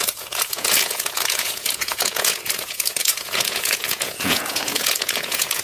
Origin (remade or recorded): remade